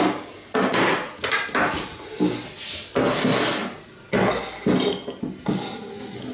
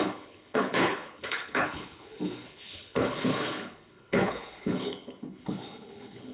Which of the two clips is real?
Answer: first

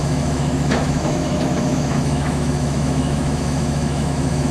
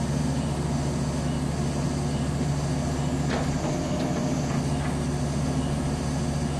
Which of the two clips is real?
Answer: second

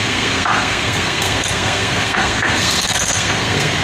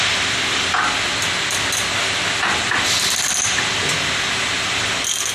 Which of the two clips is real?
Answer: second